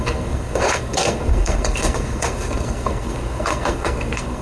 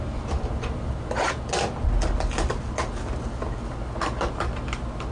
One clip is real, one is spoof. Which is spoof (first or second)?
first